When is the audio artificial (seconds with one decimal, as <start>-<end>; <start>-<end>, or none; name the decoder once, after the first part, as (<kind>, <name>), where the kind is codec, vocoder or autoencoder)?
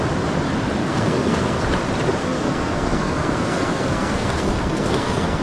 0.8-1.6 (codec, SNAC); 2.2-5.4